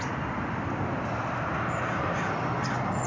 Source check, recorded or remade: remade